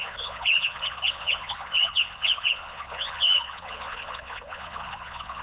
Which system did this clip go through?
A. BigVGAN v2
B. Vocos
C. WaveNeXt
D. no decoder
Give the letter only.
B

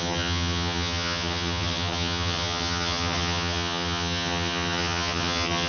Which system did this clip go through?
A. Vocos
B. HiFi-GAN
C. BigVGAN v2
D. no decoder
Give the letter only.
B